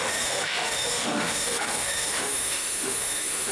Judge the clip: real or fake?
fake